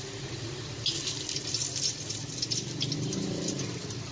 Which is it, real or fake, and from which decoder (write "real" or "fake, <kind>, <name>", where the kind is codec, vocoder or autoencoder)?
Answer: real